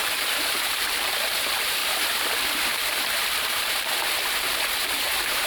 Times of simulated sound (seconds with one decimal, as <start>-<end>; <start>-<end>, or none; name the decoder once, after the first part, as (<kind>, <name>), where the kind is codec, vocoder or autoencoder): 0.0-5.5 (vocoder, BigVGAN v2)